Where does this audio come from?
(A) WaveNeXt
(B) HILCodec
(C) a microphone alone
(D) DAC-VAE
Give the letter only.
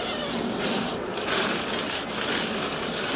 C